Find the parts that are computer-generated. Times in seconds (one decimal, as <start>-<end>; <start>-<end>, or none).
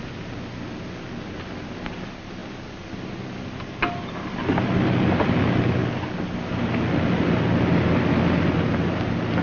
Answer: none